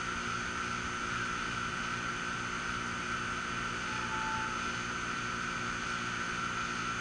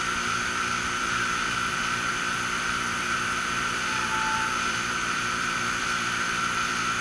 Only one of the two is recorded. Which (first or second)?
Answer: first